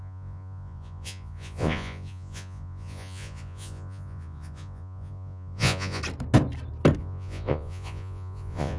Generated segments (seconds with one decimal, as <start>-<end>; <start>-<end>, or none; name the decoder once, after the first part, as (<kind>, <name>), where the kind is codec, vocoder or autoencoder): 0.0-6.0 (vocoder, Vocos); 7.0-8.8